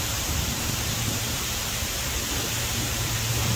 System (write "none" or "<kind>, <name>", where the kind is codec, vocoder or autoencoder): vocoder, BigVGAN v2